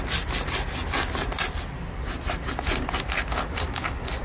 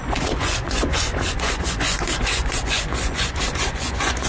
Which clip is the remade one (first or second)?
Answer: second